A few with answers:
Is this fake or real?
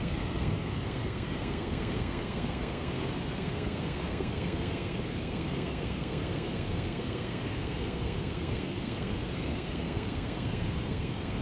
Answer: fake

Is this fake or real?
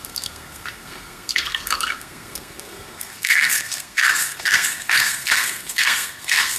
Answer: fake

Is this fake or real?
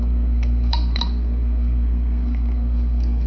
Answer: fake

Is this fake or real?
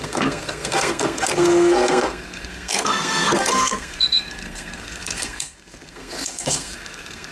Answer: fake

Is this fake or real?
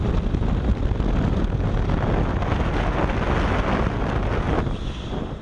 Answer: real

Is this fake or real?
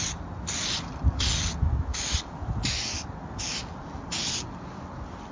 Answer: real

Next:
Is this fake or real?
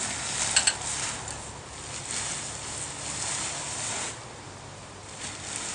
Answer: real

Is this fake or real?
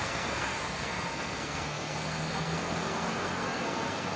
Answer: fake